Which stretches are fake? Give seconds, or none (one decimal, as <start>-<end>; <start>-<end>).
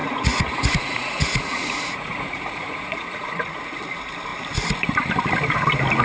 0.0-3.6